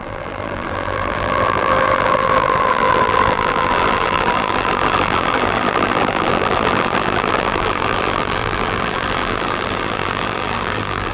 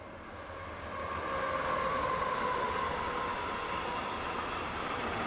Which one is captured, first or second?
second